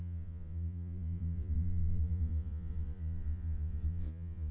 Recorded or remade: remade